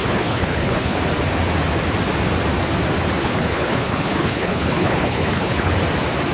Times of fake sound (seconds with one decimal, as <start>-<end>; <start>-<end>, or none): 0.0-1.0; 3.2-5.7